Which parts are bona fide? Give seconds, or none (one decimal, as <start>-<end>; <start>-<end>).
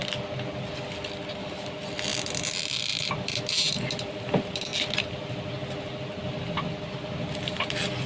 0.0-1.4; 4.7-6.9